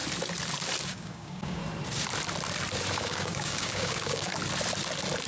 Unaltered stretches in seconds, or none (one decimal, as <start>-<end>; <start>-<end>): 0.0-0.8; 1.6-3.0; 4.3-5.3